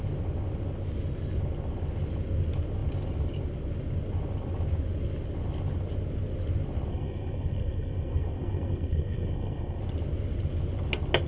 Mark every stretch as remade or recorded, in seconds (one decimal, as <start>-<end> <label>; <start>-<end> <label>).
0.0-6.9 recorded; 6.9-9.8 remade; 9.8-11.3 recorded